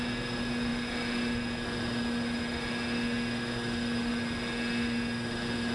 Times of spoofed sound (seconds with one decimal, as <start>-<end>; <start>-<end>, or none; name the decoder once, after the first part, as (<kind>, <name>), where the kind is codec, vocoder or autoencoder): none